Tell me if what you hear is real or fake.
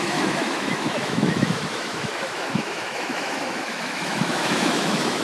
fake